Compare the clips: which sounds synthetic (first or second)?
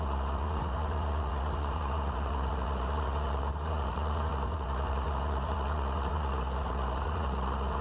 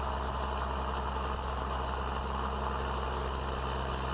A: first